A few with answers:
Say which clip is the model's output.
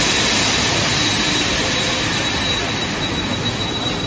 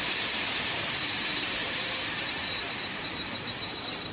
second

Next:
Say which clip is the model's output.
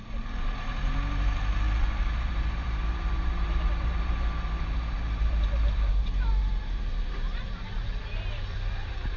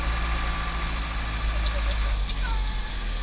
first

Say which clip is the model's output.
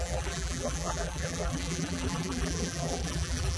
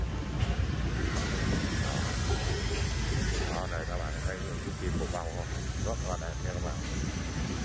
first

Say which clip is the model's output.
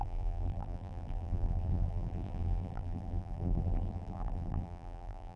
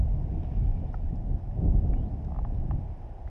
first